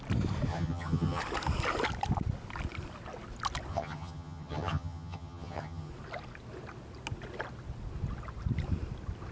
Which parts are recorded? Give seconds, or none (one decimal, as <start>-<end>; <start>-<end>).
0.0-0.5; 1.2-3.7; 5.9-9.3